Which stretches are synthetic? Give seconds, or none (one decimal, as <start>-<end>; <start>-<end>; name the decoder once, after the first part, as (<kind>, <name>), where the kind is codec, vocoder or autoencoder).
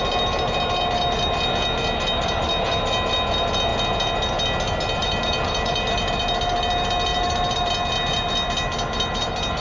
5.0-6.2 (vocoder, BigVGAN v2); 7.1-7.7